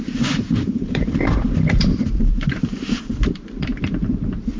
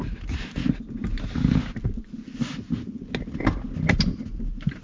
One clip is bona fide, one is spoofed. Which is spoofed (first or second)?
first